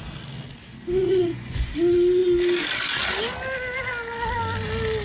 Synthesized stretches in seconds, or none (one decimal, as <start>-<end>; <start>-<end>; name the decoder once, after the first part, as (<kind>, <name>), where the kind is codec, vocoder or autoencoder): 1.0-1.7 (vocoder, Vocos)